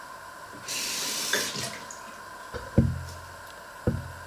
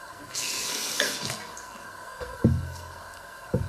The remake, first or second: second